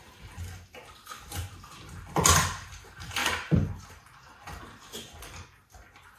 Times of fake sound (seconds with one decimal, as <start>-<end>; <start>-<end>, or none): none